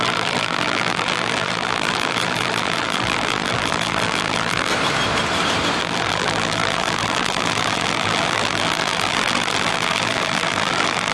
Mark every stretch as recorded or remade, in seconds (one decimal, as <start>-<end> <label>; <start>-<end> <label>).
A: 0.0-4.7 remade; 4.7-5.8 recorded; 5.8-11.1 remade